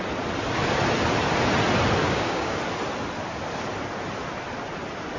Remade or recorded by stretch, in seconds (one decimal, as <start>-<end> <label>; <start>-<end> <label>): 0.0-2.0 recorded; 2.0-2.6 remade; 2.6-5.2 recorded